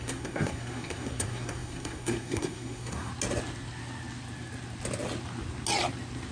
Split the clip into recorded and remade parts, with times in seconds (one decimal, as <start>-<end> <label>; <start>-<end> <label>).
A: 0.0-3.1 remade; 3.1-6.3 recorded